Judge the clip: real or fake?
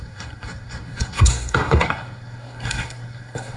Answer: fake